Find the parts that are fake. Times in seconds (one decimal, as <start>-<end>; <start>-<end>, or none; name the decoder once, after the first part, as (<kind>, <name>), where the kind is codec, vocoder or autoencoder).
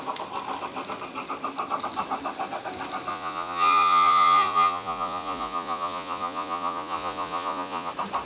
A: 3.1-7.9 (vocoder, Vocos)